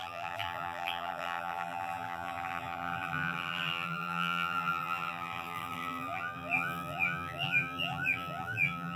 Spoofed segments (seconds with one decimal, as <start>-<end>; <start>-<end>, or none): 0.0-9.0